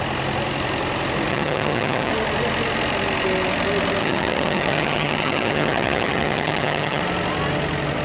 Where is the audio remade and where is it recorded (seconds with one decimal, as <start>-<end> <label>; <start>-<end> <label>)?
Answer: 0.0-1.3 recorded; 1.3-2.1 remade; 2.1-4.0 recorded; 4.0-7.0 remade; 7.0-8.0 recorded